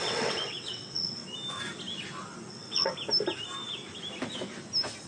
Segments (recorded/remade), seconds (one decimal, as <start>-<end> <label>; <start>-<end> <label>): 0.0-1.2 remade; 1.2-2.5 recorded; 2.5-2.9 remade; 2.9-5.1 recorded